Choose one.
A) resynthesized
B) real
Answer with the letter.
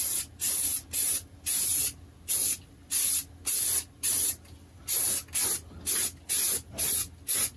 B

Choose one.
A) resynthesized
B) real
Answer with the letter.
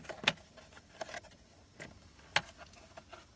B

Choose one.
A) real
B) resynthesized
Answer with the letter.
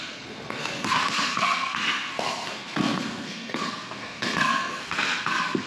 B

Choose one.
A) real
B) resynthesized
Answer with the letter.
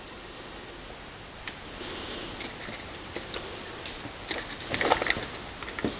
A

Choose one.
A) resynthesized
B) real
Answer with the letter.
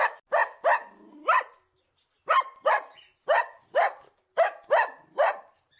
B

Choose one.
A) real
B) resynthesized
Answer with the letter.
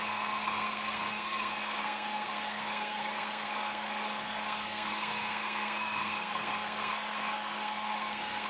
B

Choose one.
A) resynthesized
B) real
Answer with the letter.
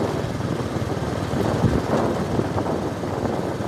B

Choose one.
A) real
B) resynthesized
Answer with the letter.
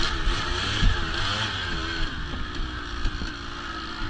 A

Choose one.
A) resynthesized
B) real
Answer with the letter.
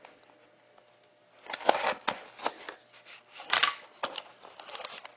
B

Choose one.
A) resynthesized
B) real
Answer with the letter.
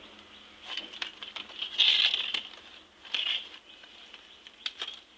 B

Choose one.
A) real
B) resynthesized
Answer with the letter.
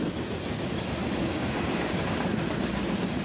A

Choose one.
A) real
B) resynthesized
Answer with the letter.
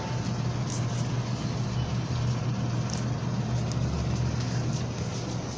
A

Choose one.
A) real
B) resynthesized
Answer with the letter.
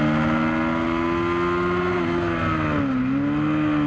A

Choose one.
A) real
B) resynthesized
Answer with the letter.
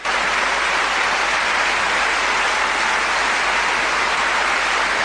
A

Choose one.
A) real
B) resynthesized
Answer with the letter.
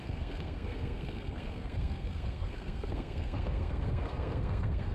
B